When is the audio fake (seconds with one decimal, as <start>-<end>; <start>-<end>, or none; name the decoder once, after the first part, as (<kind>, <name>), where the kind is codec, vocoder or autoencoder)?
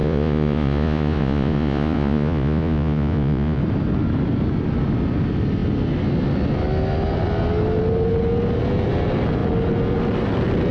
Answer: 0.0-3.6 (vocoder, Vocos)